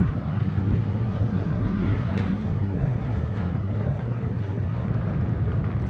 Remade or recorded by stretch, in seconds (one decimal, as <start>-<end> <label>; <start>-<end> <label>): 0.0-4.9 remade; 4.9-5.9 recorded